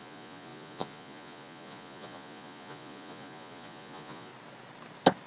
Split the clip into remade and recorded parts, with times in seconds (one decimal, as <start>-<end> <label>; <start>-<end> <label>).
0.0-4.3 remade; 4.3-5.3 recorded